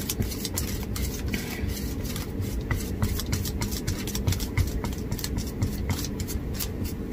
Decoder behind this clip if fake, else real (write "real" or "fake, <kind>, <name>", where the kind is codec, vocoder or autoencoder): real